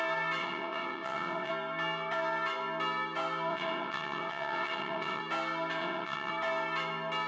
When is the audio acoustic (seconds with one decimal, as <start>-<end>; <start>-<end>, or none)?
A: 0.0-0.4; 1.5-3.5; 5.2-5.8; 6.3-7.3